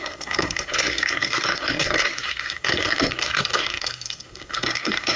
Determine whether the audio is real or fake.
fake